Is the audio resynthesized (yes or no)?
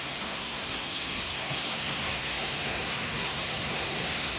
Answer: yes